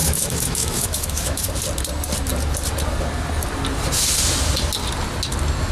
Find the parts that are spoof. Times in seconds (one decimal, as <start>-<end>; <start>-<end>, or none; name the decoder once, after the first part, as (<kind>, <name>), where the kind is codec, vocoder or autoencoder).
0.0-1.5 (autoencoder, DAC-VAE)

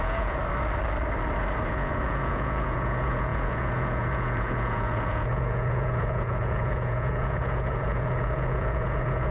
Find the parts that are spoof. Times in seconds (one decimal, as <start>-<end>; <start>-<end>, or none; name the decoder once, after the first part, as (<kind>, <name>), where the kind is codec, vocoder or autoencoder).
0.0-0.4 (vocoder, Vocos); 1.7-9.3

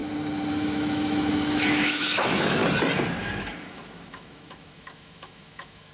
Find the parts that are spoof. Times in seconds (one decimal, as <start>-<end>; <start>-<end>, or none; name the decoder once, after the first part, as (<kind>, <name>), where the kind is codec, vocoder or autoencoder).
0.5-2.6 (autoencoder, DAC-VAE); 3.2-5.9